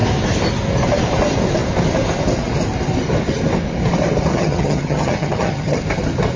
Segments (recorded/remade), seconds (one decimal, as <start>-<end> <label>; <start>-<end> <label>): 0.0-4.3 recorded; 4.3-5.8 remade; 5.8-6.4 recorded

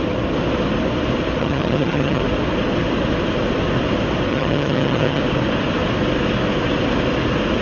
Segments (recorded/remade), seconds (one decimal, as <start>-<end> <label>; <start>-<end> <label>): 0.0-1.4 recorded; 1.4-2.2 remade; 2.2-4.3 recorded; 4.3-5.2 remade; 5.2-7.6 recorded

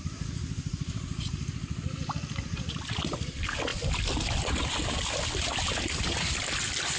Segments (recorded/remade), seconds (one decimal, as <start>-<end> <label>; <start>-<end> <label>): 0.0-7.0 recorded

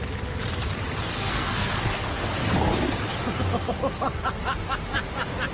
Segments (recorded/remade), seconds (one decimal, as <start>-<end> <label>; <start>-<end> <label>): 0.0-1.1 recorded; 1.1-1.7 remade; 1.7-5.5 recorded

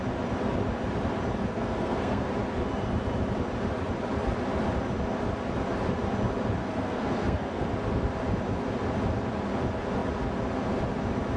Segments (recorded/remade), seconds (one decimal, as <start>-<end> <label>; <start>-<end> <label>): 0.0-1.5 recorded; 1.5-2.3 remade; 2.3-6.6 recorded; 6.6-7.6 remade; 7.6-11.4 recorded

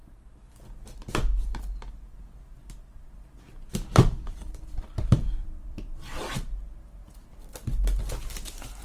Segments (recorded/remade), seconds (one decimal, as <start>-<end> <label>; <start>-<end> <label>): 0.0-4.1 recorded; 4.1-6.3 remade; 6.3-8.8 recorded